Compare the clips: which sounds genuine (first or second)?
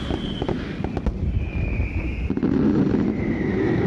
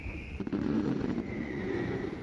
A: first